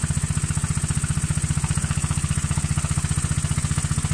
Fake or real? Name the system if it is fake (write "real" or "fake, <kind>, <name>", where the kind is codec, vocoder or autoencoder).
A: real